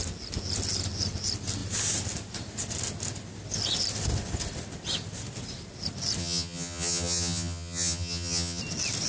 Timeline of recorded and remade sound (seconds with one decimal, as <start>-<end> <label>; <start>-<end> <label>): 0.0-6.2 recorded; 6.2-8.6 remade; 8.6-9.1 recorded